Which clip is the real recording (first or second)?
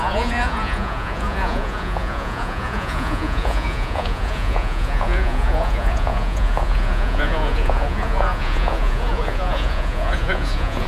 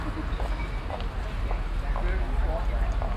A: second